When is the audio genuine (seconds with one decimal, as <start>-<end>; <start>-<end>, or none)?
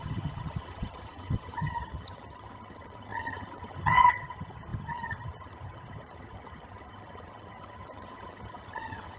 none